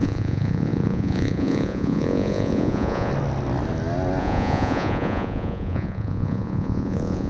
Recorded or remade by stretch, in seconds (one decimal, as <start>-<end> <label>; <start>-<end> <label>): 0.0-3.1 remade; 3.1-4.2 recorded; 4.2-7.3 remade